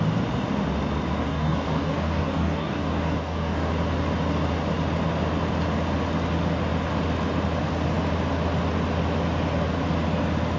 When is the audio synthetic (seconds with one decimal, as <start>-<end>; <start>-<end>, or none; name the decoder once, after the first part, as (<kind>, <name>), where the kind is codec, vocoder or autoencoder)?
1.2-3.7 (codec, DAC)